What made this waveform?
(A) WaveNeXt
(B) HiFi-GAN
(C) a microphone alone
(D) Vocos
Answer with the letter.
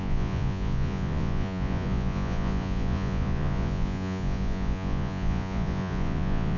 D